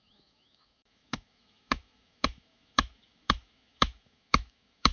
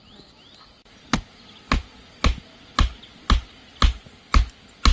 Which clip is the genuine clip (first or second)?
second